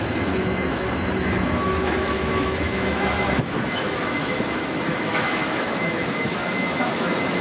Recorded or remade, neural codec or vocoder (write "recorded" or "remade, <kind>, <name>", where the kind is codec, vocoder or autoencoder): remade, autoencoder, DAC-VAE